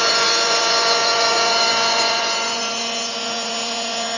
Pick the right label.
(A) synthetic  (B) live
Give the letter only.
A